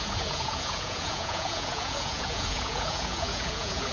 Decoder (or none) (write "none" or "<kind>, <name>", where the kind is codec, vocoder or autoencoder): vocoder, Vocos